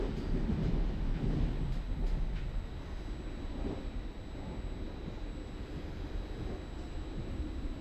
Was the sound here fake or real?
real